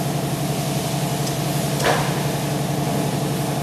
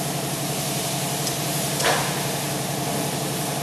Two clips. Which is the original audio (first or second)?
first